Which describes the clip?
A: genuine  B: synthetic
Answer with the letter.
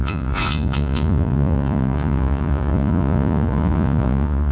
B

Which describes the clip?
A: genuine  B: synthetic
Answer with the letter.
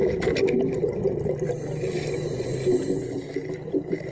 A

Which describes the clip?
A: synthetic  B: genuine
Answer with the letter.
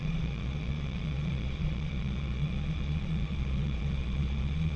A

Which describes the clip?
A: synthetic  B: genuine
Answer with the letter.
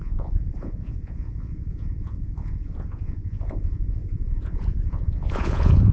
A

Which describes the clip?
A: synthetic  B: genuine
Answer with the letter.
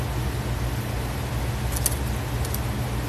B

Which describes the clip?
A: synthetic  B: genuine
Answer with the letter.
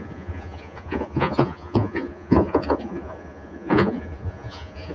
A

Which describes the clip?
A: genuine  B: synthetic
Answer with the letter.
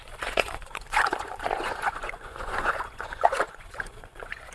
B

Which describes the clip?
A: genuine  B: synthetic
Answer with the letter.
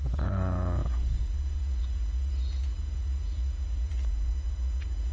B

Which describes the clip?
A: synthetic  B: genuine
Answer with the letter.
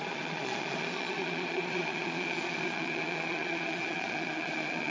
A